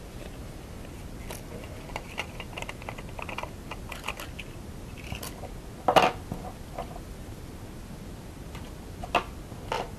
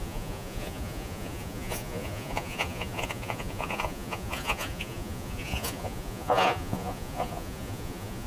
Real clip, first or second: first